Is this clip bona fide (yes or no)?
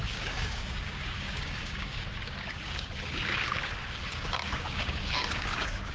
no